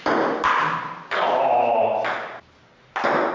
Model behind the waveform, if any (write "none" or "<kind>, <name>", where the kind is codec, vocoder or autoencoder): none